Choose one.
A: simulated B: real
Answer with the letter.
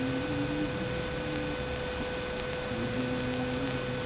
B